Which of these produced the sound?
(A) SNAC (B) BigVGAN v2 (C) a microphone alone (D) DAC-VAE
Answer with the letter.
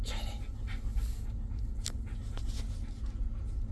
C